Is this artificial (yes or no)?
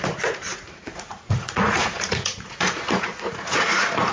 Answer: yes